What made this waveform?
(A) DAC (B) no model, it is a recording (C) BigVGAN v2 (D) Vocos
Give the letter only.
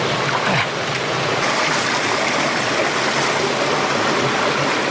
B